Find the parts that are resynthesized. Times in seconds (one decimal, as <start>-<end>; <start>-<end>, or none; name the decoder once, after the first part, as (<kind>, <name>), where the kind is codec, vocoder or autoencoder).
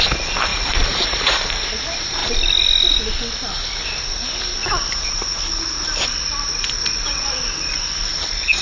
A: 0.5-1.4 (vocoder, Vocos); 6.8-7.4